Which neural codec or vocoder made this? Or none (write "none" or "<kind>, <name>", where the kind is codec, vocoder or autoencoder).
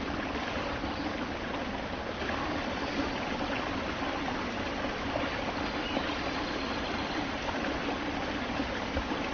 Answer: none